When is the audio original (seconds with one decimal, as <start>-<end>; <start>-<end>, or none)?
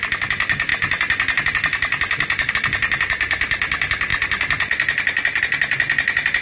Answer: 0.0-6.4